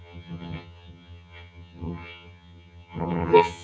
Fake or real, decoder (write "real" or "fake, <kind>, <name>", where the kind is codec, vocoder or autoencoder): fake, vocoder, HiFi-GAN